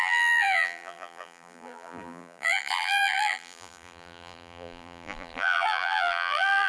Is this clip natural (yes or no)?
no